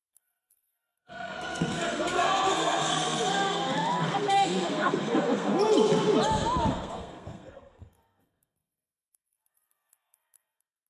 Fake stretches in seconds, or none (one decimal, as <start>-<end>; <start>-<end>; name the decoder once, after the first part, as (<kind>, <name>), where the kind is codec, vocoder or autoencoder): 0.0-5.5 (codec, SNAC); 6.7-10.9